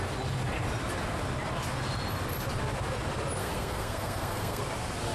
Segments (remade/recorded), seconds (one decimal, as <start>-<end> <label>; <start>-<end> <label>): 0.0-3.4 recorded; 3.4-4.6 remade; 4.6-5.1 recorded